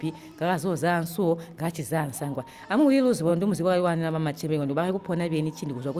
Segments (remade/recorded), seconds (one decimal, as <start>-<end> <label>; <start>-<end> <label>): 0.0-6.0 recorded